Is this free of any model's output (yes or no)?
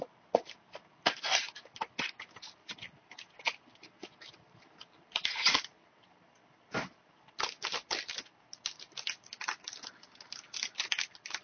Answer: yes